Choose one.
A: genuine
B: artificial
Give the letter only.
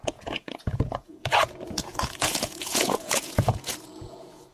B